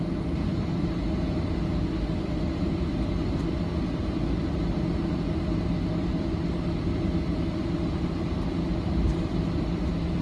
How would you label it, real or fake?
real